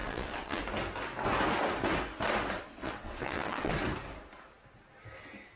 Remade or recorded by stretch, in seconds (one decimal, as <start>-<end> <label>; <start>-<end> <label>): 0.0-0.6 remade; 0.6-2.7 recorded; 2.7-3.7 remade; 3.7-5.6 recorded